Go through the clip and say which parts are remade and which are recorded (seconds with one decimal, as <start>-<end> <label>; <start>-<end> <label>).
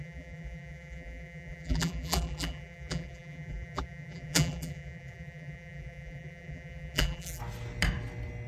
0.0-7.4 remade; 7.4-8.5 recorded